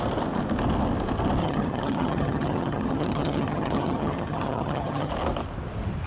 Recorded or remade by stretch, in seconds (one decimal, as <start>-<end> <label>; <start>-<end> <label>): 0.0-1.4 recorded; 1.4-5.1 remade; 5.1-6.1 recorded

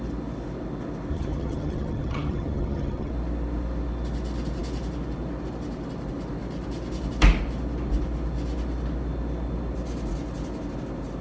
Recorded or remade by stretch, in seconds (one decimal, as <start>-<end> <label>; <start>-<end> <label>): 0.0-1.1 recorded; 1.1-3.1 remade; 3.1-11.2 recorded

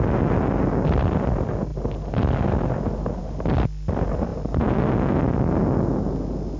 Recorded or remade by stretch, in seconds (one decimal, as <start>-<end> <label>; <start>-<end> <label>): 0.0-6.6 recorded

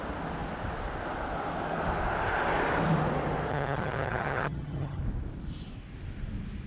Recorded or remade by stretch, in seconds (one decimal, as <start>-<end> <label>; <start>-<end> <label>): 0.0-3.5 recorded; 3.5-5.0 remade; 5.0-6.7 recorded

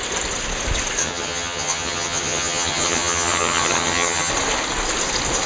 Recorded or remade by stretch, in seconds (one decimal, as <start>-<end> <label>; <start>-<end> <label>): 0.0-1.0 recorded; 1.0-4.3 remade; 4.3-5.5 recorded

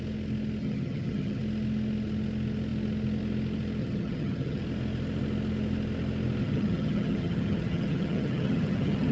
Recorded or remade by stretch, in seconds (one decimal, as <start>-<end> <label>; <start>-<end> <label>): 0.0-0.6 recorded; 0.6-1.4 remade; 1.4-3.8 recorded; 3.8-4.6 remade; 4.6-6.4 recorded; 6.4-9.1 remade

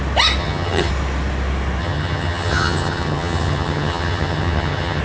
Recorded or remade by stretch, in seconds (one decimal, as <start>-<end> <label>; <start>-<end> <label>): 0.0-0.4 recorded; 0.4-0.9 remade; 0.9-1.8 recorded; 1.8-5.0 remade

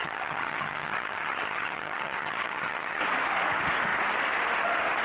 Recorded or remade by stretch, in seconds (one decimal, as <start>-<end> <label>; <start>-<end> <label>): 0.0-3.0 remade; 3.0-5.0 recorded